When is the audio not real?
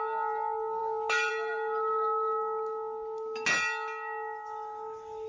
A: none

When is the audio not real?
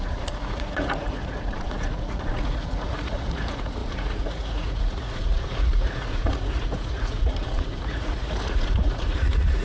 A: 0.0-9.6 (vocoder, Vocos)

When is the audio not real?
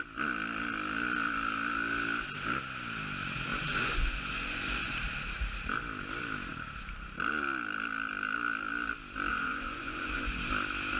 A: 3.5-4.9 (vocoder, Vocos); 9.3-10.5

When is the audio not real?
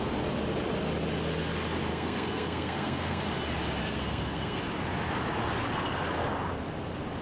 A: 1.9-3.2 (codec, SNAC); 3.8-4.6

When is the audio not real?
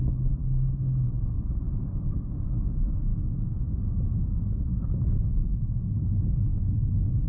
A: 0.0-3.1 (codec, HILCodec); 4.4-7.3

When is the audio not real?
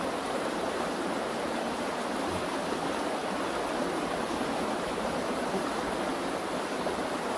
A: 0.0-3.2 (vocoder, BigVGAN v2); 4.7-6.1; 6.6-7.4